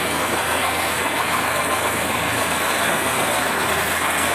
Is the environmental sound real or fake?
fake